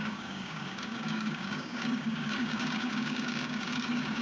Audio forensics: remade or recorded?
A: remade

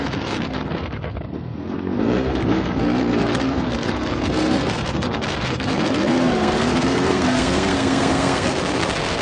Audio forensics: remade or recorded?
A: remade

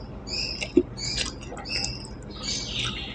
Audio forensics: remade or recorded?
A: recorded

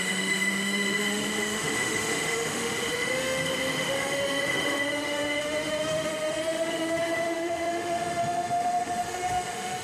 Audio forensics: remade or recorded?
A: remade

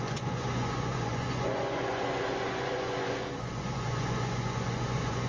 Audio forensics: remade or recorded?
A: remade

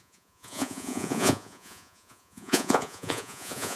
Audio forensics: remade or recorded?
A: remade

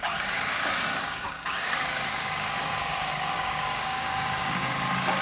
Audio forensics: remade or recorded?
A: remade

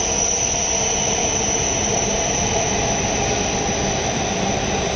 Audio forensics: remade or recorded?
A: recorded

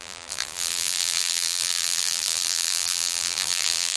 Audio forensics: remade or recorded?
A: remade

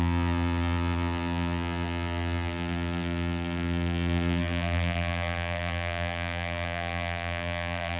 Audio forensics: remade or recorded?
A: remade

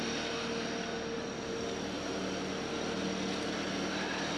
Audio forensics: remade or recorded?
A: recorded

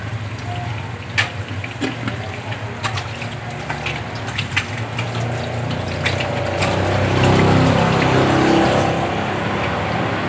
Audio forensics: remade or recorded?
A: recorded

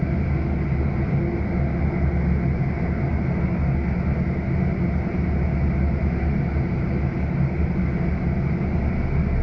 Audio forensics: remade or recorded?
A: recorded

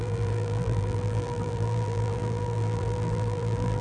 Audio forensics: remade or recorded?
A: remade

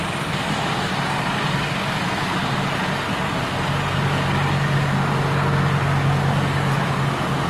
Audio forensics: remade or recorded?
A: recorded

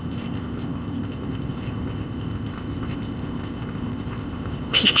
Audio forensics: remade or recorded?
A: remade